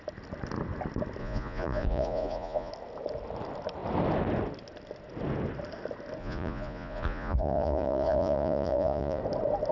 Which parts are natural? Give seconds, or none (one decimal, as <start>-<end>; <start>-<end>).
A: 0.0-1.2; 2.7-6.2; 9.2-9.7